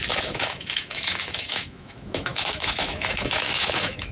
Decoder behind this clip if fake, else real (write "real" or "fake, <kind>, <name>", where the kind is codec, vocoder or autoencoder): fake, autoencoder, DAC-VAE